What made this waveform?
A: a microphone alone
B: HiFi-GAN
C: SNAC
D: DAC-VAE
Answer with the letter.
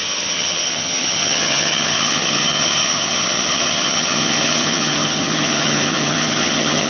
B